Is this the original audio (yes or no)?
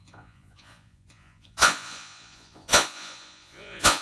no